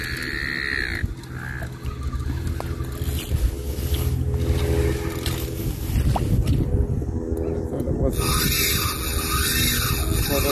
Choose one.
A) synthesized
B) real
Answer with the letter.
B